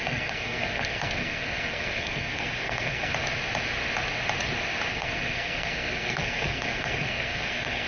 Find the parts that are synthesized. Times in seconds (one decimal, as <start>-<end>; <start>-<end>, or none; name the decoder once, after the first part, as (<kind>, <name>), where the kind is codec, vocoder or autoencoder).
0.0-3.1 (codec, SNAC); 4.9-7.9